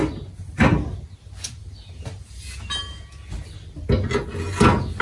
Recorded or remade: recorded